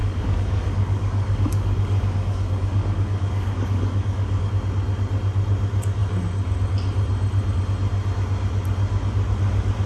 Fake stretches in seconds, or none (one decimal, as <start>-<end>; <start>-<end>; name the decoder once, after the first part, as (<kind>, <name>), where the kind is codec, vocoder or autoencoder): 0.0-4.5 (codec, DAC)